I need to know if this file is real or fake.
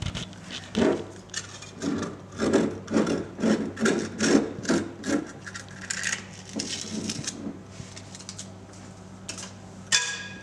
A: real